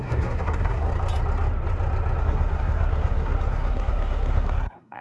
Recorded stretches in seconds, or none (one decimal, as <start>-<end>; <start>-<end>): 0.9-2.2

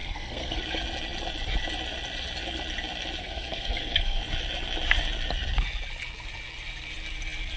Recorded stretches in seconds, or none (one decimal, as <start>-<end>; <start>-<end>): 0.6-3.2; 4.2-7.6

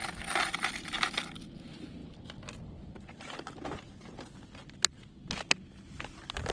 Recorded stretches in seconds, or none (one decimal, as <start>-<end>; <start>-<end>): 0.0-6.5

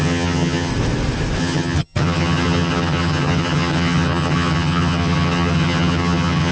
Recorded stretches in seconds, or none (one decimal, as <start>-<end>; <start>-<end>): 0.7-1.4

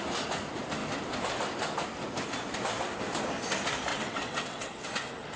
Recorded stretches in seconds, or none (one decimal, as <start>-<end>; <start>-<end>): 0.0-3.9; 4.9-5.4

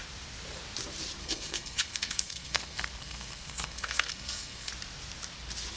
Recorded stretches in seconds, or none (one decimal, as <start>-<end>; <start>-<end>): 0.0-1.2; 4.7-5.8

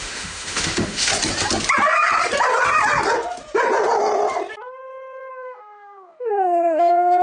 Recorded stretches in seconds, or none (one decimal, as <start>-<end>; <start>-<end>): 1.1-5.3

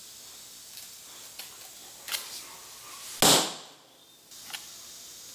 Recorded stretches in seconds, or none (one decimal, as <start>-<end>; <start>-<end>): 0.0-5.3